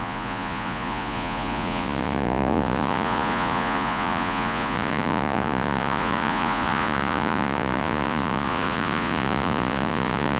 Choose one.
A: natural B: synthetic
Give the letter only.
B